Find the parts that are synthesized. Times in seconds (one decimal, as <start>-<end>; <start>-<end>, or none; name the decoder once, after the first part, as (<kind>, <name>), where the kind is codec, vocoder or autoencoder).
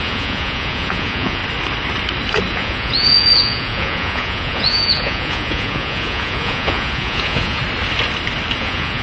0.0-1.4 (vocoder, Vocos); 2.5-7.6; 8.6-9.0